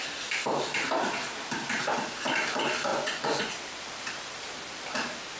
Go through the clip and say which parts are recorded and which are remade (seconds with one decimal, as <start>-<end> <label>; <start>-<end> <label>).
0.0-2.9 recorded; 2.9-3.5 remade; 3.5-5.4 recorded